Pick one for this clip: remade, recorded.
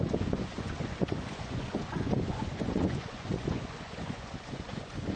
remade